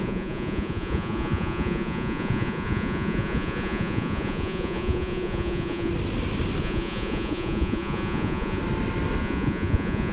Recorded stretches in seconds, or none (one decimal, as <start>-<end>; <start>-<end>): 5.9-6.6; 8.6-9.2